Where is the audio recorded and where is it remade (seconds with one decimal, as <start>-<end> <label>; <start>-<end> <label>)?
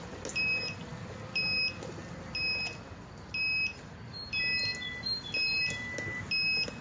0.0-6.8 recorded